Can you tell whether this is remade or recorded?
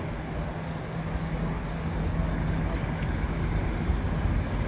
recorded